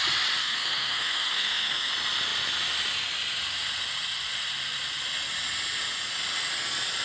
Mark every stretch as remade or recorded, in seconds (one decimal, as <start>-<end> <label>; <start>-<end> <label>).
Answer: 0.0-0.4 recorded; 0.4-1.9 remade; 1.9-7.0 recorded